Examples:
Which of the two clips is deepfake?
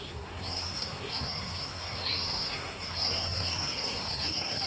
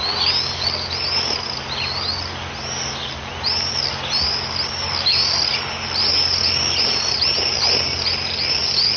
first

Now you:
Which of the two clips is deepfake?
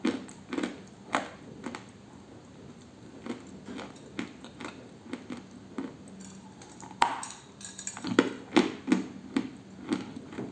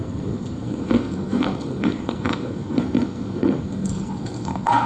second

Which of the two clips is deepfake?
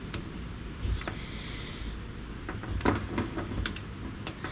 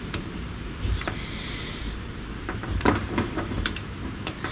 second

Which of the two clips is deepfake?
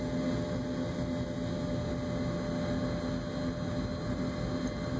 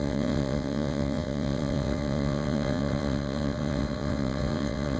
second